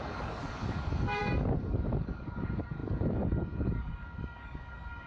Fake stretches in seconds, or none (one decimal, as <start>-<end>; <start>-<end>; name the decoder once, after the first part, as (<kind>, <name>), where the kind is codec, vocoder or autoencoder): 0.0-5.1 (codec, DAC)